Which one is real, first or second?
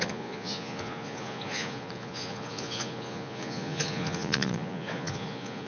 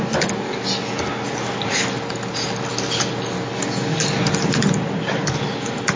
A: second